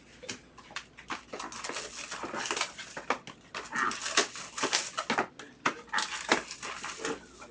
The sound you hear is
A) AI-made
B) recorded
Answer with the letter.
B